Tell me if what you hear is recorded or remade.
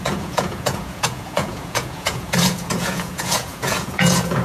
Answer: remade